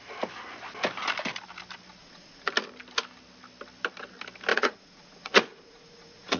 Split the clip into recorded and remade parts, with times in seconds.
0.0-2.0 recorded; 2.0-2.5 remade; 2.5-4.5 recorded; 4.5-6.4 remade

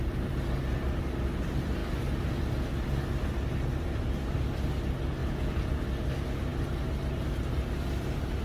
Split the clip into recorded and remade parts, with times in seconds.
0.0-5.2 recorded; 5.2-5.8 remade; 5.8-8.4 recorded

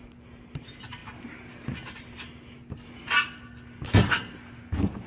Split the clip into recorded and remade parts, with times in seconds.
0.0-5.1 recorded

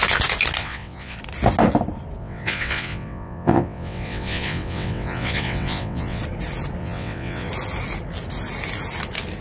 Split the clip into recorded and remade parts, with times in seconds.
0.0-0.6 recorded; 0.6-1.2 remade; 1.2-2.2 recorded; 2.2-6.2 remade; 6.2-6.8 recorded; 6.8-7.5 remade; 7.5-9.4 recorded

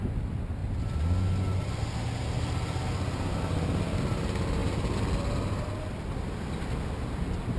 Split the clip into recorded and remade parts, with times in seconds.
0.0-7.6 recorded

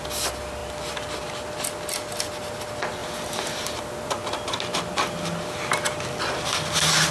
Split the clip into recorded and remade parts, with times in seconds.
0.0-3.0 recorded; 3.0-4.1 remade; 4.1-7.1 recorded

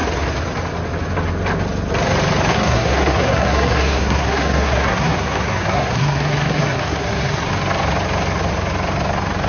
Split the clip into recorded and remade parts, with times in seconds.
0.0-2.5 recorded; 2.5-7.5 remade; 7.5-9.5 recorded

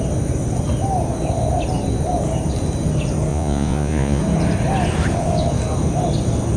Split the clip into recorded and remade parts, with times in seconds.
0.0-3.3 recorded; 3.3-4.2 remade; 4.2-6.6 recorded